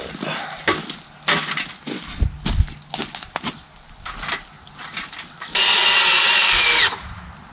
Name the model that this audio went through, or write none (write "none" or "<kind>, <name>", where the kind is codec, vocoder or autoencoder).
none